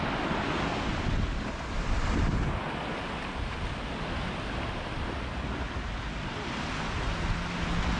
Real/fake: real